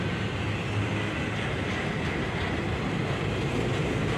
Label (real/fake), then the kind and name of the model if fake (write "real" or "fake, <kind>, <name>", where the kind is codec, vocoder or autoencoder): real